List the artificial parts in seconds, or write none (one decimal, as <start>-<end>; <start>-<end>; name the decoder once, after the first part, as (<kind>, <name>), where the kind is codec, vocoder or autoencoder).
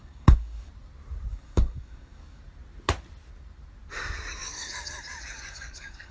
0.0-0.7 (codec, DAC); 1.3-2.4; 4.4-6.1